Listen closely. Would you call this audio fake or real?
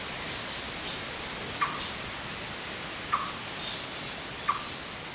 real